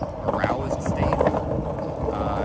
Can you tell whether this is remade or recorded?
recorded